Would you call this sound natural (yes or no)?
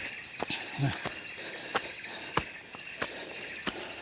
yes